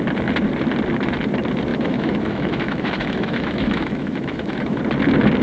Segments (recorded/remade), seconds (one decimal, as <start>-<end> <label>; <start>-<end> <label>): 0.0-1.7 recorded; 1.7-4.8 remade; 4.8-5.4 recorded